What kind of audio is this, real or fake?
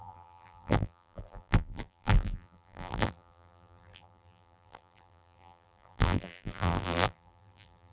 fake